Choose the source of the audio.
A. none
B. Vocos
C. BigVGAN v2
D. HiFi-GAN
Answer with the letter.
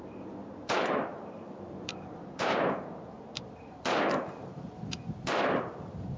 C